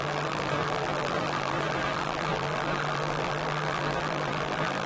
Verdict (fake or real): fake